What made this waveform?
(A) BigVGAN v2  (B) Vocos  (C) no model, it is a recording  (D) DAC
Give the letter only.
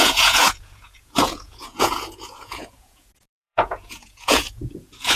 B